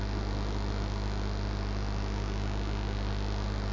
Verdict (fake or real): real